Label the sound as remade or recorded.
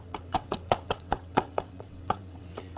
remade